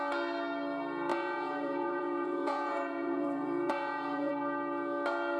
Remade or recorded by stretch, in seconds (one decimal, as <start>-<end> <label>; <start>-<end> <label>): 0.0-1.1 recorded; 1.1-4.3 remade; 4.3-5.4 recorded